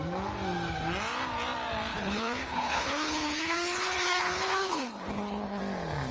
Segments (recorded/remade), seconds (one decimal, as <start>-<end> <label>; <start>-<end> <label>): 0.0-1.9 recorded; 1.9-5.6 remade; 5.6-6.1 recorded